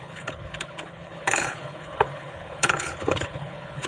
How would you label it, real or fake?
fake